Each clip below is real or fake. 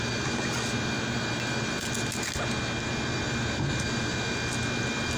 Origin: real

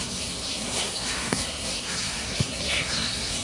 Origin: fake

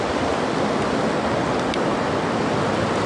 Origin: real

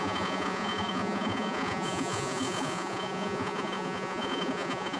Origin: fake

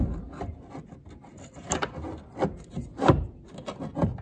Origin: real